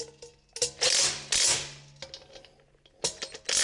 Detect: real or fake real